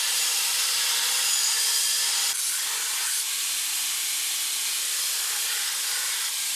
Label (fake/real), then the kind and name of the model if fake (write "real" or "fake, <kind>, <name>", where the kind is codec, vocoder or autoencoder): real